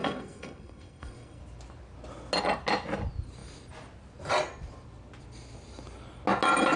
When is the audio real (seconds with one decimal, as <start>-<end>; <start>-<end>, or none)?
1.4-6.8